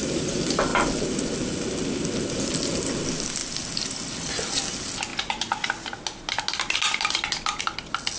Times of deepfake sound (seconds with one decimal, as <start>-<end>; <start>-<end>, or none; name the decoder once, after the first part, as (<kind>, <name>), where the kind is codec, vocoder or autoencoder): none